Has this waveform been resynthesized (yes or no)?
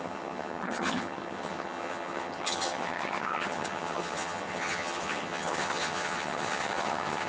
yes